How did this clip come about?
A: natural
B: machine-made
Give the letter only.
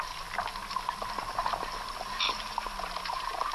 A